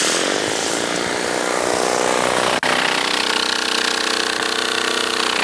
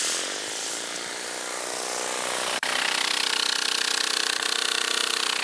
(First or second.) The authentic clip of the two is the first